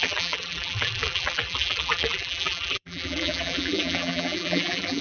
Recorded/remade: remade